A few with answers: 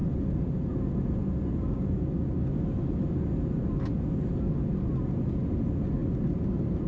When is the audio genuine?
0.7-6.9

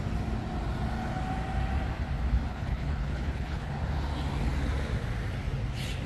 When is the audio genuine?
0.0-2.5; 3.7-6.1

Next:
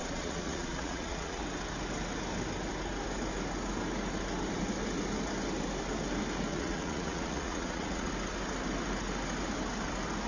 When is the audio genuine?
1.4-6.5; 8.1-10.3

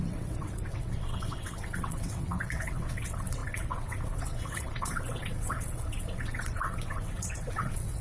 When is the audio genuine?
none